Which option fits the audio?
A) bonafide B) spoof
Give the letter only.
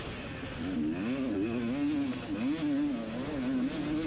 A